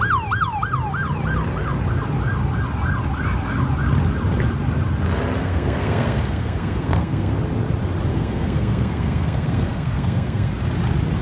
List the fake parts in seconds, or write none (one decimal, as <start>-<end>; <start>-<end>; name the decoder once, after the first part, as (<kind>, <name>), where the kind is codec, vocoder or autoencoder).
5.4-7.3 (codec, SNAC); 8.1-10.5